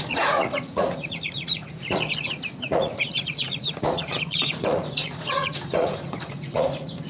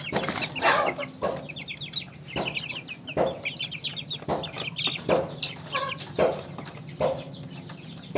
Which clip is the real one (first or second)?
second